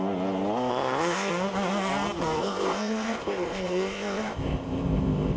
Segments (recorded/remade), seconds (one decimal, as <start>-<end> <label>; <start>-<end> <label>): 0.0-0.7 recorded; 0.7-1.3 remade; 1.3-2.4 recorded; 2.4-5.4 remade